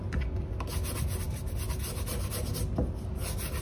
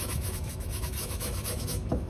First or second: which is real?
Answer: first